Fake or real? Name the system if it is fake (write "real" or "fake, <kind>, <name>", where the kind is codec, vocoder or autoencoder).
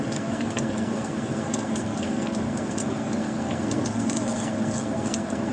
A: fake, codec, SNAC